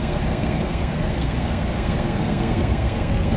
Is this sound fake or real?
fake